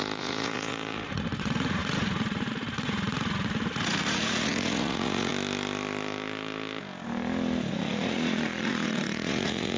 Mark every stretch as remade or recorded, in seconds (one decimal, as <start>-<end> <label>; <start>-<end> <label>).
0.0-5.3 remade; 5.3-7.7 recorded; 7.7-9.8 remade